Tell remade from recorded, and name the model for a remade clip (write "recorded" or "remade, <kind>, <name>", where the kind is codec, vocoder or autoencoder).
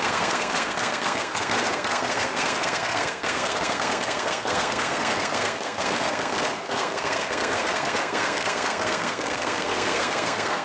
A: remade, codec, SNAC